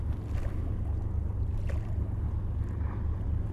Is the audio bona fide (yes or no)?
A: yes